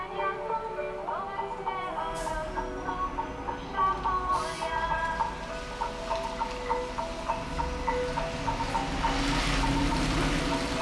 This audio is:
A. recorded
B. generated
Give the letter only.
A